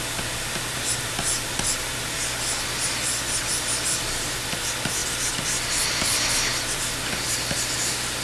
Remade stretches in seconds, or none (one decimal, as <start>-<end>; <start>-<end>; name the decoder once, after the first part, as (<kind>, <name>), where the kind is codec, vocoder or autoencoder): none